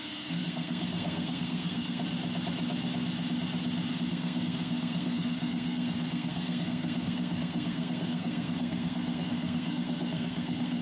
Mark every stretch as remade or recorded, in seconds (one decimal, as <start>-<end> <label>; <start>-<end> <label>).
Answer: 0.0-2.0 remade; 2.0-3.9 recorded; 3.9-10.8 remade